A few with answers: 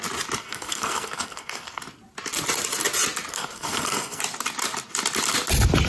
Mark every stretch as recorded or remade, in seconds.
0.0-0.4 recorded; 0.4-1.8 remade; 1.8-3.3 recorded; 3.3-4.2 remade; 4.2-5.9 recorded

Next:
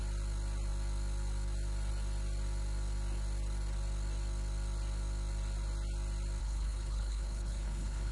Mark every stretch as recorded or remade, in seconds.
0.0-6.4 recorded; 6.4-8.1 remade

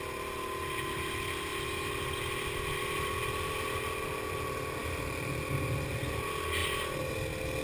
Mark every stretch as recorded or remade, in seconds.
0.0-7.6 recorded

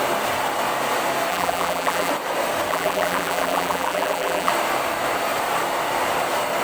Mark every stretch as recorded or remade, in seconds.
0.0-1.3 recorded; 1.3-2.1 remade; 2.1-2.7 recorded; 2.7-4.5 remade; 4.5-6.6 recorded

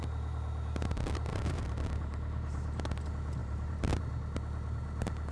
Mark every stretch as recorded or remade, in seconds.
0.0-1.3 recorded; 1.3-3.0 remade; 3.0-3.4 recorded; 3.4-4.0 remade; 4.0-5.3 recorded